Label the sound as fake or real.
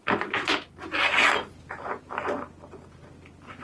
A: real